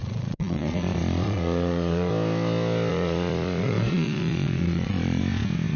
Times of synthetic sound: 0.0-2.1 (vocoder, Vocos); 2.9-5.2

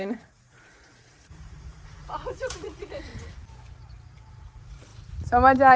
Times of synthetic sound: 0.0-3.1 (vocoder, Vocos); 4.3-5.8

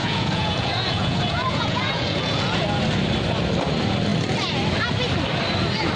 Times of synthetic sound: 0.0-2.6 (vocoder, Vocos)

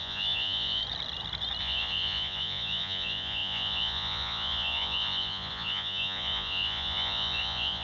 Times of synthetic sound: 0.0-0.8 (vocoder, Vocos); 1.6-7.8

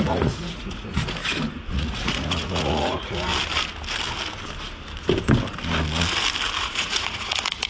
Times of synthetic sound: 0.0-1.2 (vocoder, Vocos); 1.7-3.3; 6.6-7.7

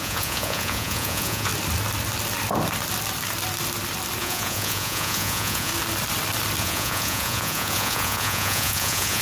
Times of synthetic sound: 0.0-1.5 (vocoder, Vocos); 4.2-5.7; 6.6-9.2

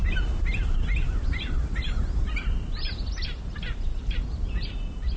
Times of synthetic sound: none